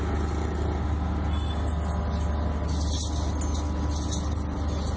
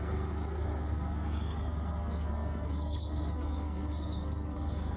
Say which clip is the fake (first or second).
second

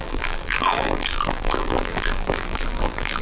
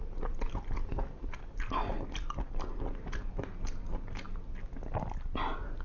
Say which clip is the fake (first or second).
first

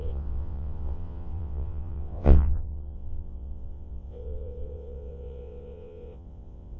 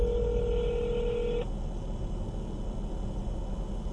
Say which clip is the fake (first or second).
first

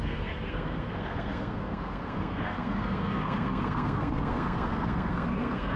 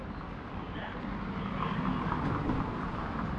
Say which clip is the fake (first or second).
first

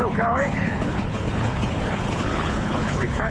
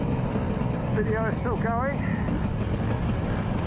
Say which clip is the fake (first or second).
first